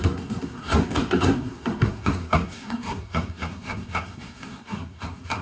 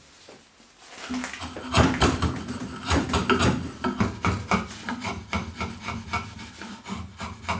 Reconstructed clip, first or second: first